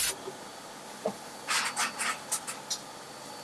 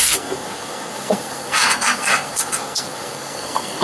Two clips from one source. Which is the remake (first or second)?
second